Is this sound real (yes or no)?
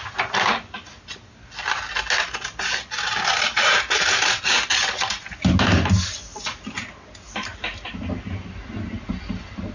yes